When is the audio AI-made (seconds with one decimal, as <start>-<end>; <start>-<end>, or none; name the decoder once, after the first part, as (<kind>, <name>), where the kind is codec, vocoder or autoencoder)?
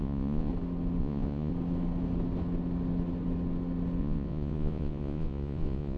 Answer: 0.0-0.5 (vocoder, Vocos); 1.0-1.5; 4.0-6.0